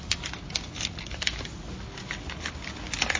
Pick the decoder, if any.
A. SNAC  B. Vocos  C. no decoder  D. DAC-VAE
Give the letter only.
C